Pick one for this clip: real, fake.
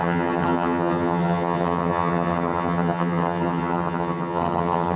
fake